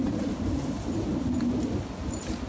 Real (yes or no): yes